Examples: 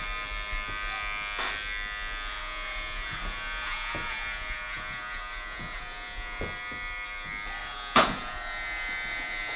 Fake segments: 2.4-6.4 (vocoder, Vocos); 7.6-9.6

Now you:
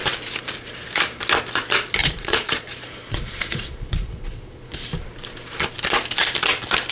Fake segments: 2.0-4.7 (vocoder, Vocos)

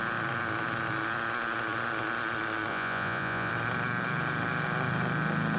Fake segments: 2.7-3.5 (vocoder, Vocos)

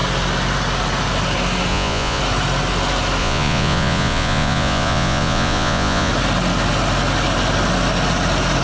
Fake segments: 1.7-2.2 (vocoder, Vocos); 3.2-6.1

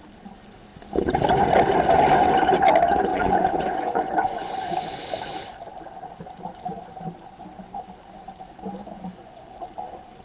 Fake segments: 3.1-4.5 (vocoder, Vocos); 8.8-9.6

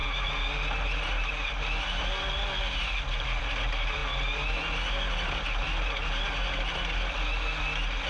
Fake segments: none

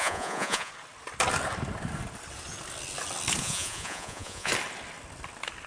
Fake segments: 0.0-0.7 (vocoder, Vocos); 3.4-4.5

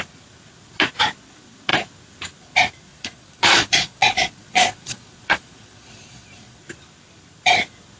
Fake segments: 2.9-6.6 (vocoder, Vocos)